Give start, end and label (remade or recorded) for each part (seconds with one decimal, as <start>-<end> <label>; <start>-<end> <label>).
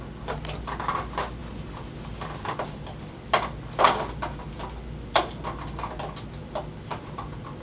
0.0-7.6 recorded